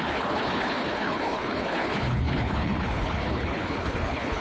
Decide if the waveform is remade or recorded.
remade